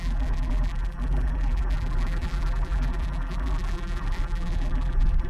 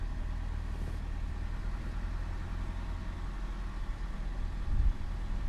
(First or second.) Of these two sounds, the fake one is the first